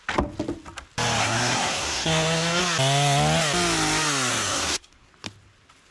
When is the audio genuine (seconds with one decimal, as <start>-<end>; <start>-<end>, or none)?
0.0-1.2; 2.6-4.3; 5.1-5.9